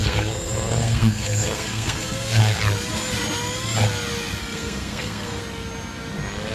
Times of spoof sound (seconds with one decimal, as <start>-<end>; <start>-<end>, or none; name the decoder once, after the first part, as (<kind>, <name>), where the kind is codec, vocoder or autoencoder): 0.0-2.6 (codec, SNAC); 4.4-5.4